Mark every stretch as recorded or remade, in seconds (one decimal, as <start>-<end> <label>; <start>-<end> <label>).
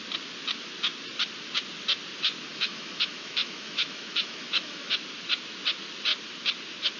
0.0-2.5 recorded; 2.5-4.9 remade; 4.9-7.0 recorded